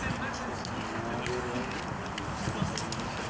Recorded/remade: recorded